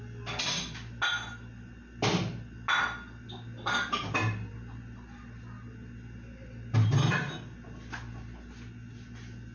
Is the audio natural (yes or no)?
yes